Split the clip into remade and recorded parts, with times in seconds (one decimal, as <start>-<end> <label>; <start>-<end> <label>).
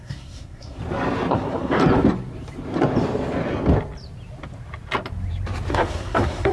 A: 0.0-0.8 remade; 0.8-1.3 recorded; 1.3-1.8 remade; 1.8-5.7 recorded; 5.7-6.5 remade